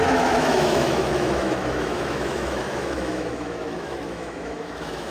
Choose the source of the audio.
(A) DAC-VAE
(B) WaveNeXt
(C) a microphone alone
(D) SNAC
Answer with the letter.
A